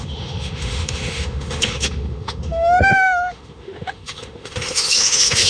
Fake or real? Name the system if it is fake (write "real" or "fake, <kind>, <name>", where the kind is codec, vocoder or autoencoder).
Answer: fake, autoencoder, DAC-VAE